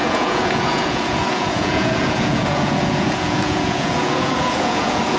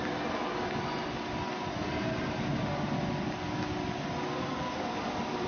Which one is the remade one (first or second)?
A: first